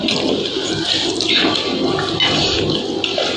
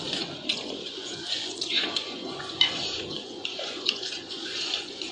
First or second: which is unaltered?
first